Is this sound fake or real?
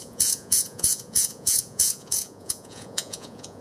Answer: fake